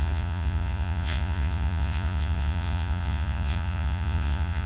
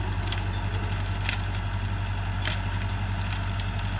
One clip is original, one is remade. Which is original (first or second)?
second